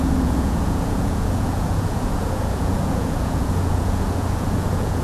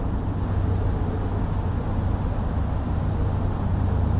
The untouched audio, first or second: second